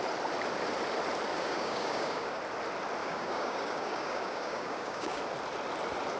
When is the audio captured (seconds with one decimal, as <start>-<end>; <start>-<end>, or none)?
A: 0.0-1.3; 2.4-3.0; 5.2-6.2